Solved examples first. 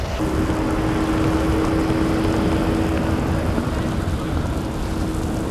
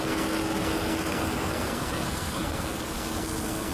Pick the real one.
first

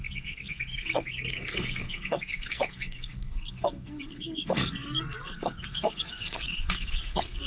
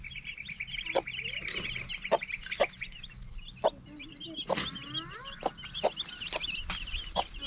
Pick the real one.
second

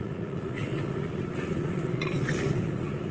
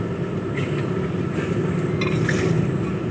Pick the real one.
second